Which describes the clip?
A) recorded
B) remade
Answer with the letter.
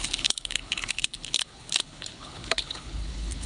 B